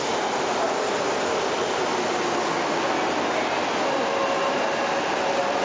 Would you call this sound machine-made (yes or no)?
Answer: no